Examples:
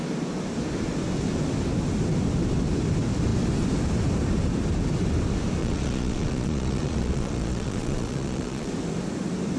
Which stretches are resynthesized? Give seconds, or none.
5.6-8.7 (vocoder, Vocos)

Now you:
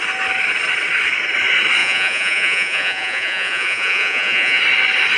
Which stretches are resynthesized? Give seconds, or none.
1.8-4.6 (vocoder, Vocos)

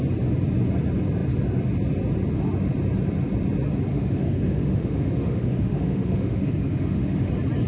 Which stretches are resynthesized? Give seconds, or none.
3.9-7.3 (autoencoder, DAC-VAE)

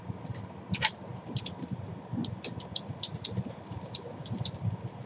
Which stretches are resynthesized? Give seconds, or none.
1.1-4.2 (vocoder, BigVGAN v2)

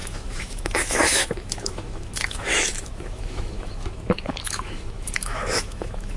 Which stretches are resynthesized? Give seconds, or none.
0.0-6.2 (autoencoder, DAC-VAE)